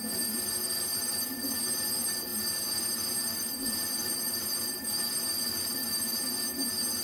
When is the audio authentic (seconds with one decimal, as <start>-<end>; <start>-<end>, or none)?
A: 0.0-7.0

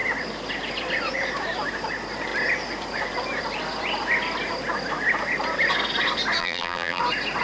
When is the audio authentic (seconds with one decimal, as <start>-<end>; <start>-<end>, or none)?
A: 0.0-6.4; 7.0-7.4

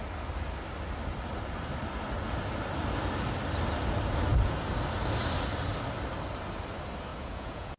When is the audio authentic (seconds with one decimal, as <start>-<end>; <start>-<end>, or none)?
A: 0.0-7.1

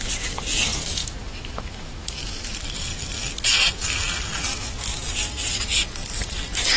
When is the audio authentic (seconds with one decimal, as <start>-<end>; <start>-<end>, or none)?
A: 0.0-1.0; 2.5-4.5; 5.1-6.8

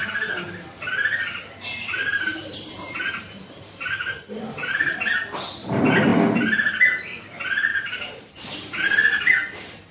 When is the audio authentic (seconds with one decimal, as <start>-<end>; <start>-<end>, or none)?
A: 4.8-7.7; 8.3-9.9

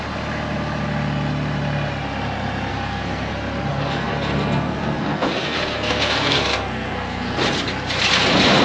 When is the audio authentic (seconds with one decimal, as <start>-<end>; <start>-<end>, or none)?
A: 0.0-2.7; 3.3-3.7; 7.4-8.6

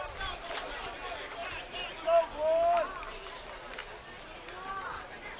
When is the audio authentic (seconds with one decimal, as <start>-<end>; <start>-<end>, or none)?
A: 0.0-5.4

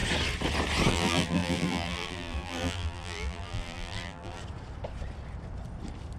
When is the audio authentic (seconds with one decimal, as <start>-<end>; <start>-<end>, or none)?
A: 0.0-0.9; 4.4-6.2